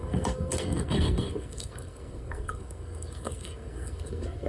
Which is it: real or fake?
fake